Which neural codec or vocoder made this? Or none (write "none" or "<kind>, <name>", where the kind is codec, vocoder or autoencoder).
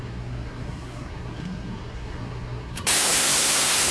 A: codec, SNAC